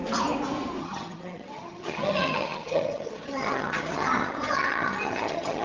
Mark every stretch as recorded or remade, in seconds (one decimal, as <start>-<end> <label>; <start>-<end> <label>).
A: 0.0-0.8 recorded; 0.8-5.6 remade